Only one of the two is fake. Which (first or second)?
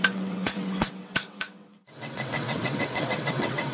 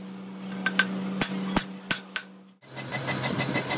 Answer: first